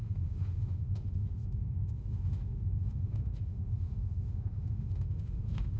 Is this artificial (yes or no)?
yes